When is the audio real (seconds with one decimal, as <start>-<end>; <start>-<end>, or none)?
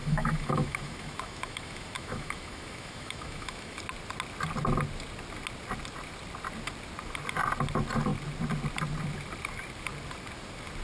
3.8-10.8